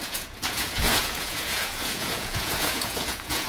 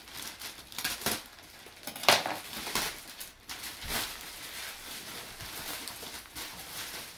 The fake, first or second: first